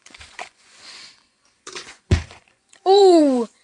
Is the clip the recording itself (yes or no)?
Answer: no